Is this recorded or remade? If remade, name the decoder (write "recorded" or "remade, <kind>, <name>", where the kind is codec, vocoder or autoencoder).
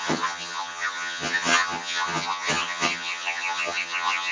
remade, vocoder, HiFi-GAN